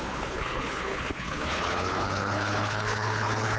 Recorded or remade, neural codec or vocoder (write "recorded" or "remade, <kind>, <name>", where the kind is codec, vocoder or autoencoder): remade, codec, HILCodec